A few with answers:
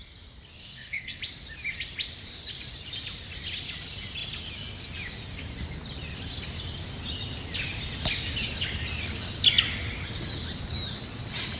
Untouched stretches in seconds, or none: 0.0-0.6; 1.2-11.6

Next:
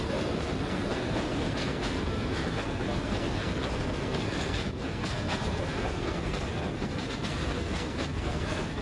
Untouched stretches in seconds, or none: none

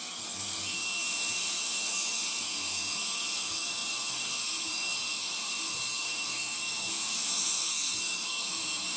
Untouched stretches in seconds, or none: none

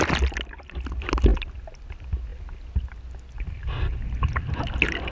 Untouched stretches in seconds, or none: 0.0-5.1